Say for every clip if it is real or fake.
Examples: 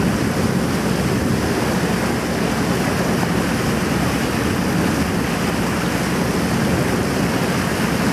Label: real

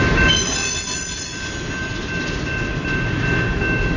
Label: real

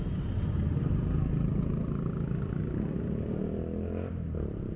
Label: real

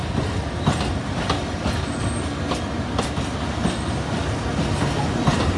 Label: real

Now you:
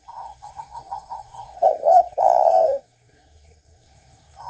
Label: fake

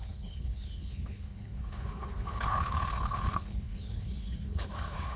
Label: fake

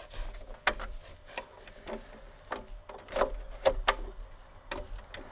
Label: real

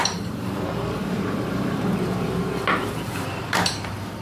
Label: fake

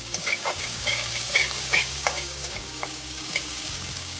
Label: fake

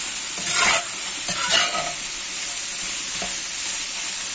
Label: real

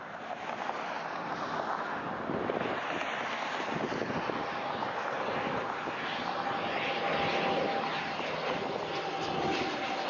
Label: real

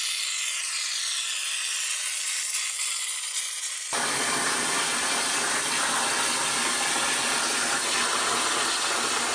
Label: real